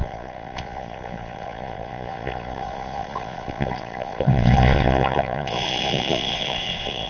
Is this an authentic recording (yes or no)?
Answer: no